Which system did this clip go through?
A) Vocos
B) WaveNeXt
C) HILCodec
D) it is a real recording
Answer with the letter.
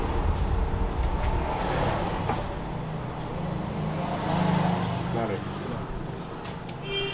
D